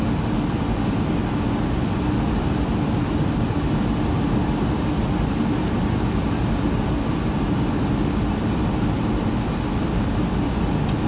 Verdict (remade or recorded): recorded